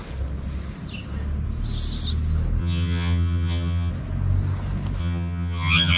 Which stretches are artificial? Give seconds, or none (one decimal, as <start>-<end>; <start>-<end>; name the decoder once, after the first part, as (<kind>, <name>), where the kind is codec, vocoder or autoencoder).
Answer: 2.6-3.9 (vocoder, HiFi-GAN); 5.0-6.0